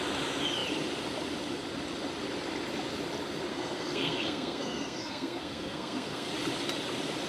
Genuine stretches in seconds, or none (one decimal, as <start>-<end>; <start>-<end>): 0.0-3.5; 6.3-7.3